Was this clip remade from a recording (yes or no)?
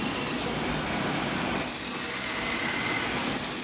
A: no